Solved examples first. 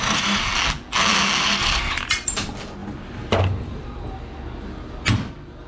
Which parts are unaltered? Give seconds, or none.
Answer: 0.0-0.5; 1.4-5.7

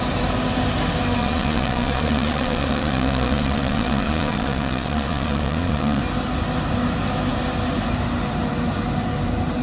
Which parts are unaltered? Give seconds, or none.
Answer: 0.0-1.2; 6.0-9.6

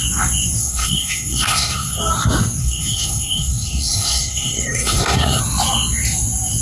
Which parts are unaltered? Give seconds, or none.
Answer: 0.0-0.6; 2.0-2.6; 5.4-6.6

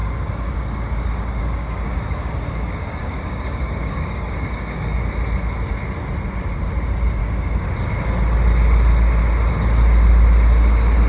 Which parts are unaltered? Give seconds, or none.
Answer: 5.0-7.2; 7.7-11.1

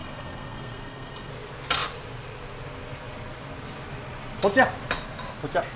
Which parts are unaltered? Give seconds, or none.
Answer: 1.3-5.8

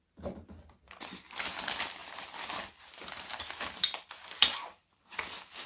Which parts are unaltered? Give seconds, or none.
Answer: 0.0-5.7